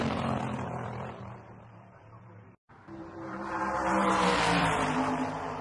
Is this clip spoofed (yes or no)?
yes